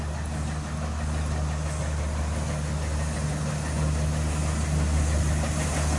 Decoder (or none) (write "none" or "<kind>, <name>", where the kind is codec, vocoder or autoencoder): none